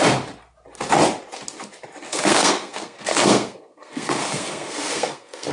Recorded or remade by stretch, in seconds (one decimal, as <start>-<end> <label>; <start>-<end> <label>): 0.0-2.1 recorded; 2.1-5.5 remade